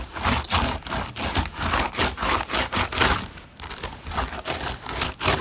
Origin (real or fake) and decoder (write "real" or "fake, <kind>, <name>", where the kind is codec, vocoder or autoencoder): real